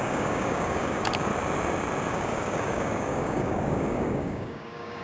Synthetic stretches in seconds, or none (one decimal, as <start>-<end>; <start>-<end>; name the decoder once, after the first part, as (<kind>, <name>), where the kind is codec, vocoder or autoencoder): 0.0-1.3 (codec, DAC); 2.1-5.0